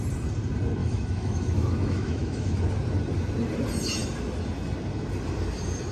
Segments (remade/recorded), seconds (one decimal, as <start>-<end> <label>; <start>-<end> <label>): 0.0-0.8 recorded; 0.8-2.6 remade; 2.6-5.9 recorded